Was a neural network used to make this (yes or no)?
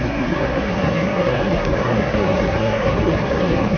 yes